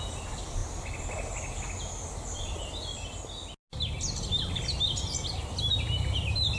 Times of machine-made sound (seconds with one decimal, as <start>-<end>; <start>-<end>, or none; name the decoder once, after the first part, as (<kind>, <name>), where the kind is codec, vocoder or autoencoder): none